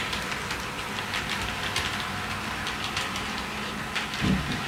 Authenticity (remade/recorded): recorded